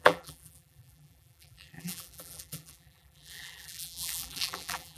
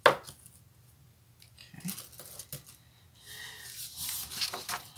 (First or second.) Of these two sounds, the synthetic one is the first